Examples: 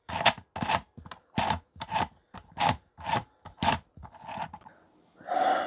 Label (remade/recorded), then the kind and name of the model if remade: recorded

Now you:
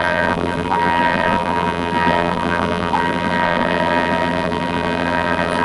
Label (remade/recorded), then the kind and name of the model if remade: remade, vocoder, BigVGAN v2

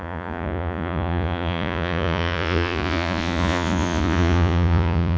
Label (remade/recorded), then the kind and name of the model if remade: remade, vocoder, Vocos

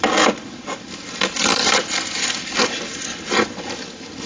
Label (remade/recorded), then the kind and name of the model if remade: recorded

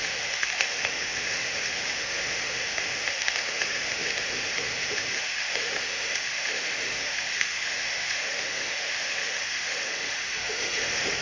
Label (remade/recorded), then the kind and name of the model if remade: remade, autoencoder, DAC-VAE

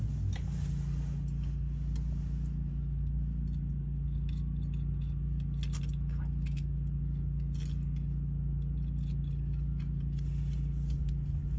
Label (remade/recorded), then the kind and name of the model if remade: recorded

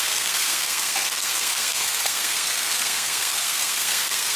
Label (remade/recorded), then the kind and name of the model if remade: remade, codec, SNAC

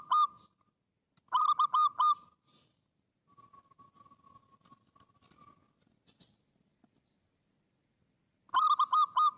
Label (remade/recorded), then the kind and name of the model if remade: recorded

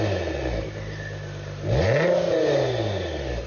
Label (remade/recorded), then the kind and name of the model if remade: recorded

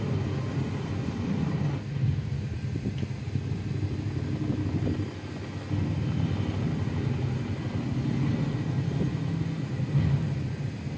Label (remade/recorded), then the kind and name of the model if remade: recorded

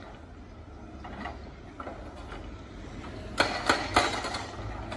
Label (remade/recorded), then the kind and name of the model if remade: recorded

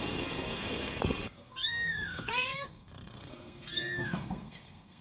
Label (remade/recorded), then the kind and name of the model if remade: remade, codec, SNAC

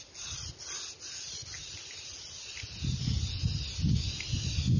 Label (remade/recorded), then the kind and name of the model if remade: recorded